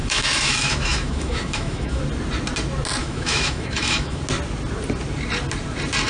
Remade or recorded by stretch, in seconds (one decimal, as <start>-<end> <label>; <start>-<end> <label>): 0.0-2.0 remade; 2.0-3.0 recorded; 3.0-4.2 remade; 4.2-6.1 recorded